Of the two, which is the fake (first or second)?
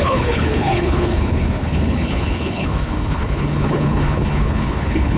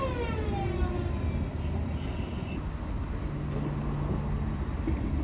first